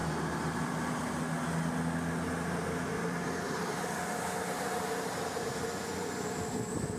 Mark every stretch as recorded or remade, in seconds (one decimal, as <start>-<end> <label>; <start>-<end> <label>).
0.0-7.0 recorded